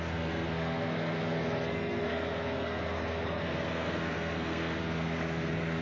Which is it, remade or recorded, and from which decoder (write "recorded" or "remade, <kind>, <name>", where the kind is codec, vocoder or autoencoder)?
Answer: remade, codec, SNAC